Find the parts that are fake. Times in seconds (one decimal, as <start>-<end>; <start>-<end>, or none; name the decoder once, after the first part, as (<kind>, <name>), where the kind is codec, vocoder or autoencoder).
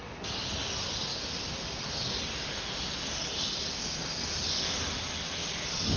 none